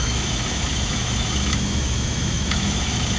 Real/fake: fake